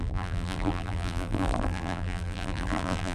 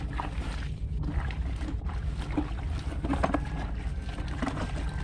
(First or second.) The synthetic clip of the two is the first